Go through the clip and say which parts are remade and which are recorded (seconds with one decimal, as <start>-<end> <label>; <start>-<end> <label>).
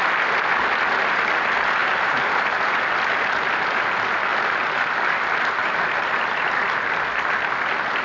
0.0-1.8 recorded; 1.8-2.9 remade; 2.9-5.6 recorded; 5.6-6.1 remade; 6.1-8.0 recorded